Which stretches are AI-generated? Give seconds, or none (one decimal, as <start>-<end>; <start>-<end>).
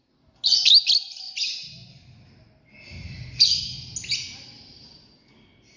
none